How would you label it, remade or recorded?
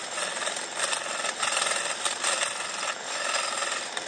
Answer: recorded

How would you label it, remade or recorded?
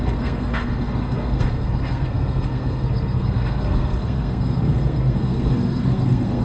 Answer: remade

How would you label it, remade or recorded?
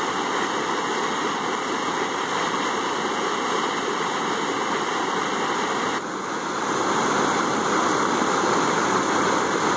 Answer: recorded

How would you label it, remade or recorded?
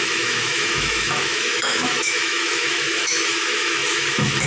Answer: remade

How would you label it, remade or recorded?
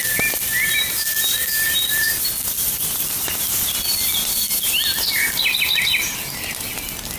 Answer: recorded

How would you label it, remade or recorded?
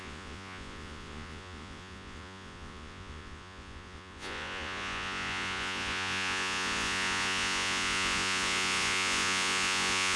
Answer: remade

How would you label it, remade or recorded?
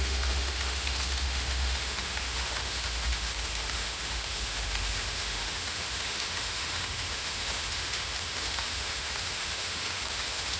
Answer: remade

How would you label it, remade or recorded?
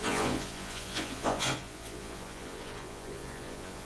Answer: remade